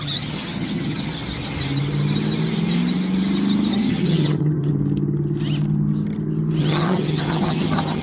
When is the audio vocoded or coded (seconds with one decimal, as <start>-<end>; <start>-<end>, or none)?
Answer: 0.0-1.1; 3.7-4.7; 6.6-8.0